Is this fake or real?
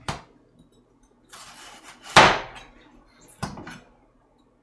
real